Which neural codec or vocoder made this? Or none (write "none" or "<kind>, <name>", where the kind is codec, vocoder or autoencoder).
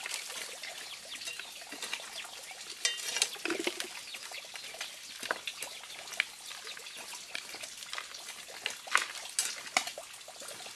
none